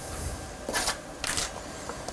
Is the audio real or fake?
fake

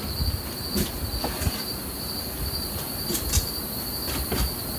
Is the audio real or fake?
real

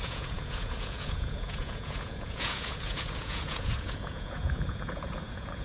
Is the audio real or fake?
fake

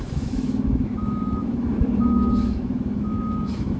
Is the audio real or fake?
fake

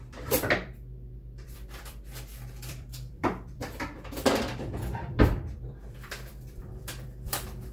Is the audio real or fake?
fake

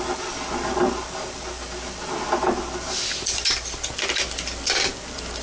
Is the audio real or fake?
real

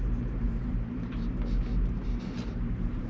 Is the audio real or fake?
fake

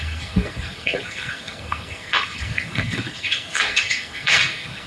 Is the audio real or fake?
fake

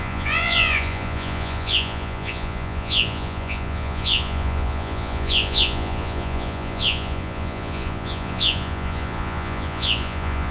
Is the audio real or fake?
fake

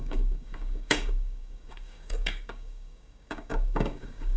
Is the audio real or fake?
fake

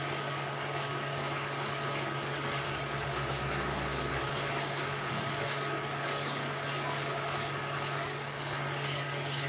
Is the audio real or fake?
fake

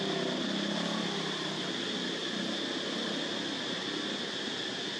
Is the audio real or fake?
real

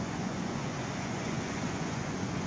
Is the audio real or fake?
fake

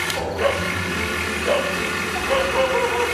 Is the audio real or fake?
fake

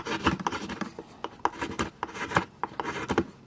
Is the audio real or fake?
real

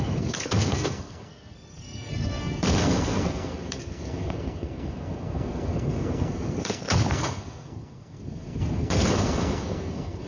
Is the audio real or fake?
fake